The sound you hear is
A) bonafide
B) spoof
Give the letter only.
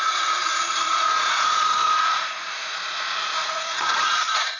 B